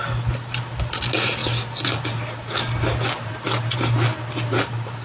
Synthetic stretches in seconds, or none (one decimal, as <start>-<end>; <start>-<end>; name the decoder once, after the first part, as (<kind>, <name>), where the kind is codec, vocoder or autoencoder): none